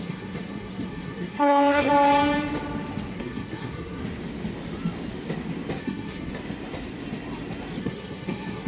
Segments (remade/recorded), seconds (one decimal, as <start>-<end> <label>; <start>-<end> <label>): 0.0-1.9 remade; 1.9-3.1 recorded; 3.1-4.0 remade; 4.0-5.8 recorded; 5.8-6.3 remade; 6.3-7.8 recorded; 7.8-8.7 remade